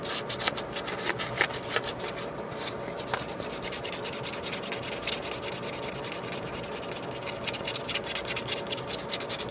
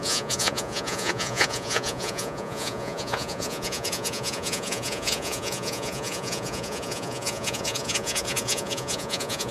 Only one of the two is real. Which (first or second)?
first